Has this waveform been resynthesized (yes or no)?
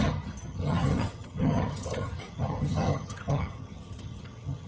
yes